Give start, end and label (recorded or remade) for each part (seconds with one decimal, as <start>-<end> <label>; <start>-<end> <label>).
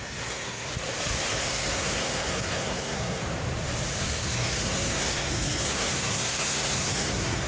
0.0-0.7 remade; 0.7-1.3 recorded; 1.3-3.2 remade; 3.2-4.0 recorded; 4.0-7.5 remade